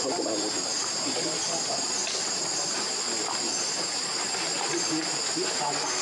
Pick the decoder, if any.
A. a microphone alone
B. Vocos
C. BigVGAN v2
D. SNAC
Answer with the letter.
A